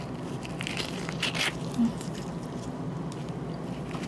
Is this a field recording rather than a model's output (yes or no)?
yes